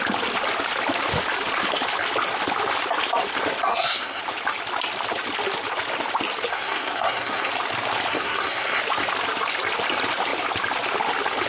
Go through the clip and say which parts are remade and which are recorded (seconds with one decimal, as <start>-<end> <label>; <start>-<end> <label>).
0.0-3.7 recorded; 3.7-4.2 remade; 4.2-6.5 recorded; 6.5-7.5 remade; 7.5-8.1 recorded; 8.1-8.8 remade; 8.8-11.5 recorded